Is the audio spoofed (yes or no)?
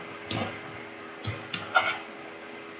no